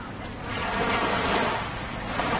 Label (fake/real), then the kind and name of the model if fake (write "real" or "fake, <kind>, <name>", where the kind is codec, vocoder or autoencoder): real